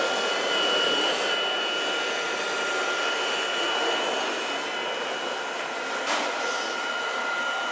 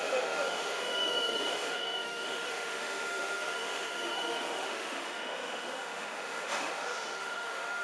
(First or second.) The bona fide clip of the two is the first